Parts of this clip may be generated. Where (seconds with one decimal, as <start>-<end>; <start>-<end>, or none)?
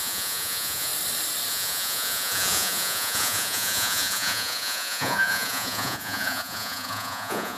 0.0-0.9; 1.5-7.6